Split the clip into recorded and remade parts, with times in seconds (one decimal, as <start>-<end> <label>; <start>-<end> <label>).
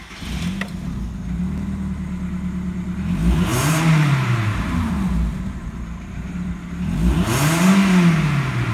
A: 0.0-3.5 recorded; 3.5-6.3 remade; 6.3-8.7 recorded